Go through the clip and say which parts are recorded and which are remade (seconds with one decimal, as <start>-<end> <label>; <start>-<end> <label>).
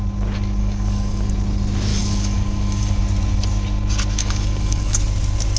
0.0-0.6 recorded; 0.6-1.3 remade; 1.3-1.9 recorded; 1.9-3.0 remade; 3.0-4.2 recorded; 4.2-5.0 remade; 5.0-5.6 recorded